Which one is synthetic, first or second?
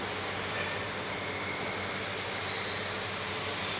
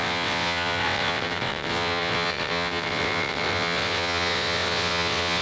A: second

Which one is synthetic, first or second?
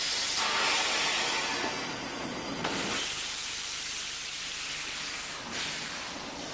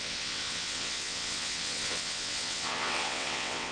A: second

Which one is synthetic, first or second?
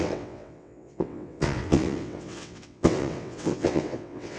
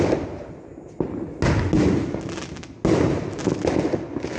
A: first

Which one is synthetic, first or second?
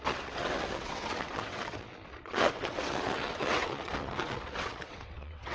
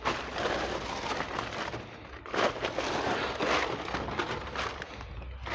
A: first